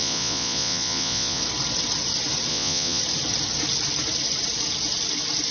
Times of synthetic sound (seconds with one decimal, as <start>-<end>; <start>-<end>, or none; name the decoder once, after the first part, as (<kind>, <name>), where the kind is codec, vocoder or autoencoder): 0.0-1.4 (vocoder, Vocos); 2.5-3.0